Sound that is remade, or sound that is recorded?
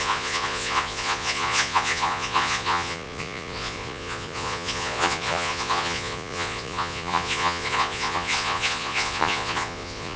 remade